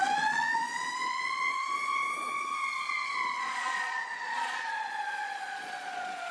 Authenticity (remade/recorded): remade